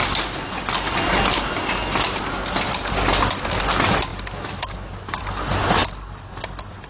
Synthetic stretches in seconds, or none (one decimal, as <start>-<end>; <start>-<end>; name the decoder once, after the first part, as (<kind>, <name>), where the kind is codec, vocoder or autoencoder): none